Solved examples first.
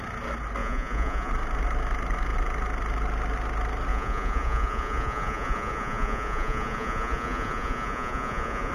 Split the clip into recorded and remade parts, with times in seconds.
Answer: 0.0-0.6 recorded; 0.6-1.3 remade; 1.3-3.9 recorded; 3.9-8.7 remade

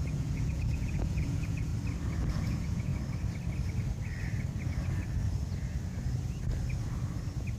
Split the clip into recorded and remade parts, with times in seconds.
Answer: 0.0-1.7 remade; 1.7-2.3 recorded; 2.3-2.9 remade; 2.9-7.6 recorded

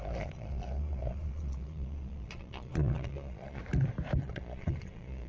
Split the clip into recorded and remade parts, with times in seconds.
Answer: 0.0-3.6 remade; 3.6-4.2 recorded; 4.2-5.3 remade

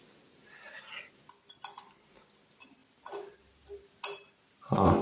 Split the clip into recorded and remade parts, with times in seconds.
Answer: 0.0-5.0 recorded